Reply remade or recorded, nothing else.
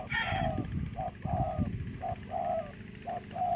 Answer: recorded